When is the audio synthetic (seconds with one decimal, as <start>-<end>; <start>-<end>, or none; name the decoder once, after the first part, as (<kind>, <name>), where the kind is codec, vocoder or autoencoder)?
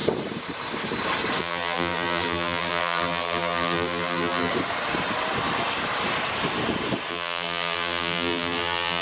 1.4-4.5 (vocoder, BigVGAN v2); 7.1-9.0